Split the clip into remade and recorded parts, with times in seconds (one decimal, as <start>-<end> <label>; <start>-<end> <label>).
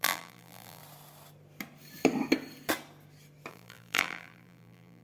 0.0-0.8 remade; 0.8-3.5 recorded; 3.5-5.0 remade